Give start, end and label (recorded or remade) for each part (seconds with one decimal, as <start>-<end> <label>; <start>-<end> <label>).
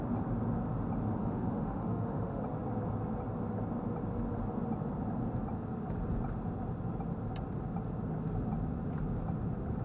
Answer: 0.0-1.2 recorded; 1.2-2.4 remade; 2.4-9.8 recorded